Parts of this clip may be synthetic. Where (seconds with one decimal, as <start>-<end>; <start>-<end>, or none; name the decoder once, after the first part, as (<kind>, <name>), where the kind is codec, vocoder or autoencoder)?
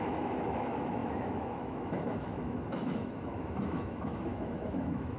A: 0.0-5.2 (autoencoder, DAC-VAE)